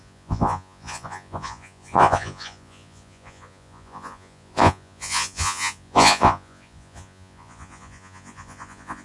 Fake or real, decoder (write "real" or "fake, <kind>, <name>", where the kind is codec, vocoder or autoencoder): fake, vocoder, Vocos